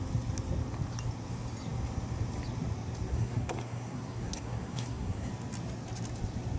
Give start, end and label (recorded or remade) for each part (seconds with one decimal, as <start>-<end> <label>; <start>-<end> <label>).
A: 0.0-3.1 recorded; 3.1-5.3 remade; 5.3-6.6 recorded